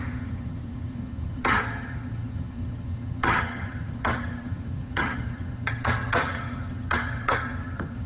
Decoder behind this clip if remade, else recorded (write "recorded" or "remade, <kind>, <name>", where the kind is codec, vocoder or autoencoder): remade, vocoder, HiFi-GAN